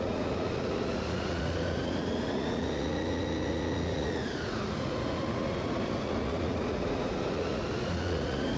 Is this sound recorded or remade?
remade